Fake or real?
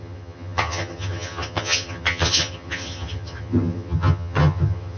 fake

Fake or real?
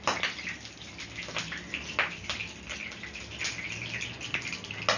real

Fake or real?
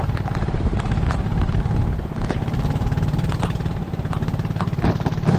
real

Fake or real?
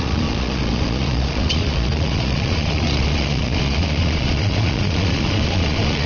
fake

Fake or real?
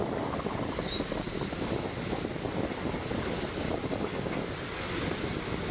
real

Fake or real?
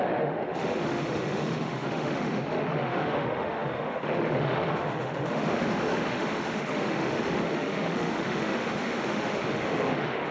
fake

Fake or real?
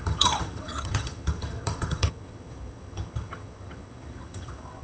fake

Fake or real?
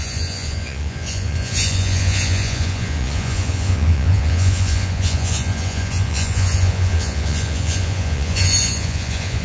fake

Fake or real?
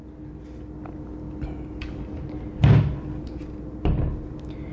real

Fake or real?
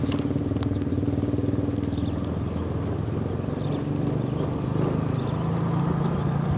real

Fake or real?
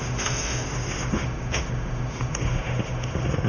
fake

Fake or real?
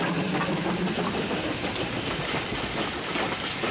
real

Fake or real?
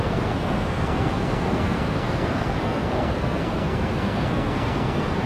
fake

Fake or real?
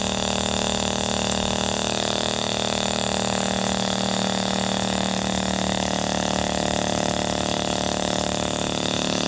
fake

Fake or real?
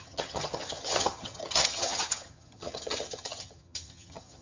fake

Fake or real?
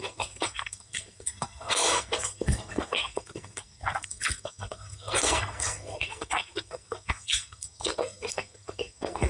fake